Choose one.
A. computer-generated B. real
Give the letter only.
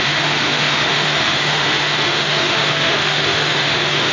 A